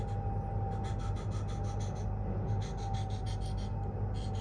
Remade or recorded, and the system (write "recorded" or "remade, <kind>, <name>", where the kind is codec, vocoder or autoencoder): recorded